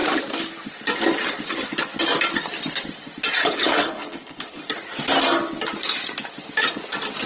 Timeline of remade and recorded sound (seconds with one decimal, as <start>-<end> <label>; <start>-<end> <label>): 0.0-3.4 recorded; 3.4-4.6 remade; 4.6-7.3 recorded

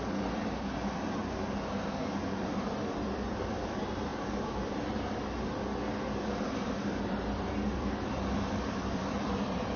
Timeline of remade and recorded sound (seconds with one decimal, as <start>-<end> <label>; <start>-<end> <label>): 0.0-1.2 remade; 1.2-2.2 recorded; 2.2-4.1 remade; 4.1-6.5 recorded; 6.5-9.8 remade

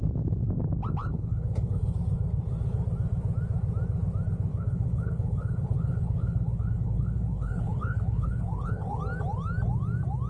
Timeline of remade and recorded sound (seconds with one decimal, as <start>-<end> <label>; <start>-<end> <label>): 0.0-1.0 recorded; 1.0-2.0 remade; 2.0-4.5 recorded; 4.5-9.0 remade; 9.0-10.3 recorded